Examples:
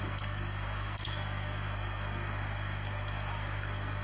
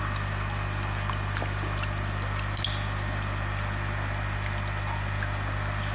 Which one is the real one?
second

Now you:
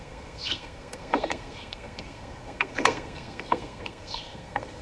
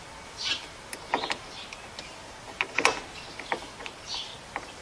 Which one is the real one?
second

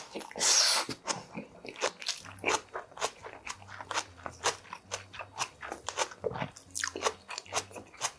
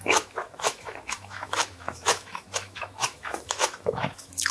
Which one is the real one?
first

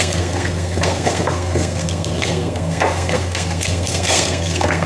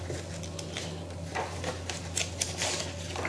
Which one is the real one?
second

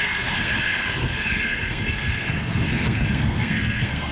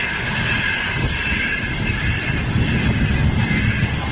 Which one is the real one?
second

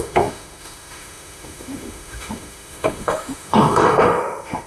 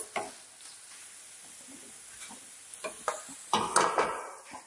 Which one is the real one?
second